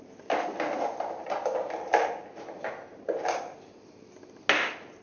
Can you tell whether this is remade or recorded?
recorded